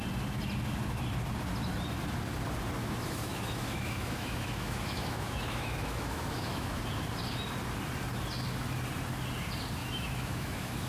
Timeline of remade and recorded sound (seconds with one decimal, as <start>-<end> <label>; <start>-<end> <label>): 0.0-2.8 recorded; 2.8-6.8 remade; 6.8-9.8 recorded; 9.8-10.9 remade

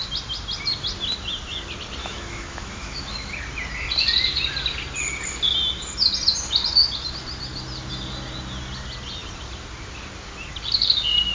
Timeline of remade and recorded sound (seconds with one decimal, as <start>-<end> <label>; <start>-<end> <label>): 0.0-2.0 recorded; 2.0-3.3 remade; 3.3-11.3 recorded

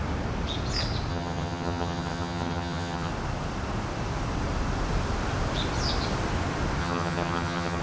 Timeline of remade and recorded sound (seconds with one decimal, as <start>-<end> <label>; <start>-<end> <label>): 0.0-1.1 recorded; 1.1-3.1 remade; 3.1-6.8 recorded; 6.8-7.8 remade